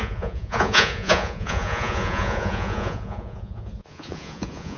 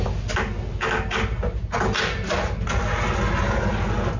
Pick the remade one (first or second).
first